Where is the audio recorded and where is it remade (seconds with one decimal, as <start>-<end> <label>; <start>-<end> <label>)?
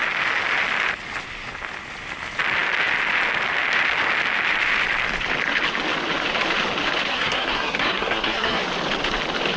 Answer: 0.0-7.1 recorded; 7.1-8.6 remade; 8.6-9.6 recorded